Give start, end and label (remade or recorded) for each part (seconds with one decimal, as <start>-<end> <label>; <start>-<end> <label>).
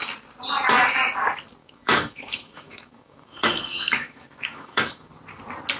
0.0-1.6 recorded; 1.6-5.1 remade; 5.1-5.8 recorded